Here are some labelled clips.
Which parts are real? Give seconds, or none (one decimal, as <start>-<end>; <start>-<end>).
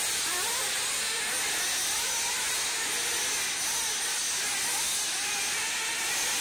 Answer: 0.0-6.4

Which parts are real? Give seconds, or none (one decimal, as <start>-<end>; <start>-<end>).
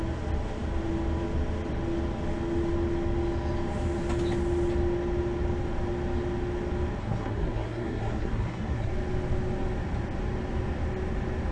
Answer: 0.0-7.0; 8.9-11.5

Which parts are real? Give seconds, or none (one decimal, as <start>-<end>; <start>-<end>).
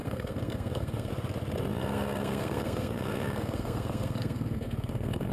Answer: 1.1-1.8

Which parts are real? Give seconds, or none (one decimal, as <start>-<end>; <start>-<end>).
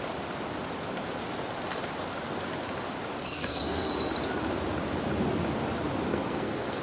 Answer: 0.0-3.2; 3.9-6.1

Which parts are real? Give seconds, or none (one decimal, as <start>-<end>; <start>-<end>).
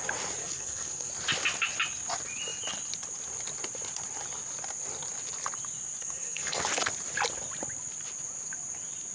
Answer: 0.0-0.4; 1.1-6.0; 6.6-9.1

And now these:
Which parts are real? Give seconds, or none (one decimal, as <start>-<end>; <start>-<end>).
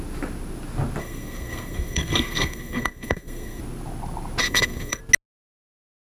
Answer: 0.0-1.0; 3.6-4.4; 5.0-6.1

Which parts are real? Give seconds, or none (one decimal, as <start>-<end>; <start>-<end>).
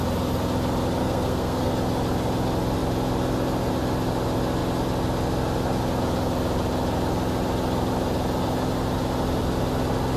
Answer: 0.0-1.0; 1.7-10.2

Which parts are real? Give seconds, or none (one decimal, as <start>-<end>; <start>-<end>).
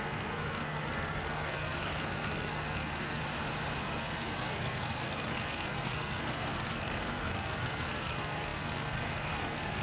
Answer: 3.2-3.8